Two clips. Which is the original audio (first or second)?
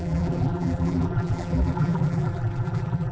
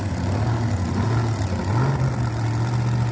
second